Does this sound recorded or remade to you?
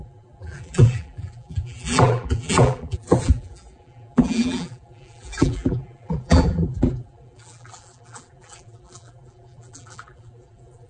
remade